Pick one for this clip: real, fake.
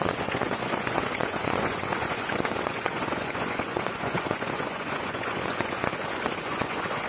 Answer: fake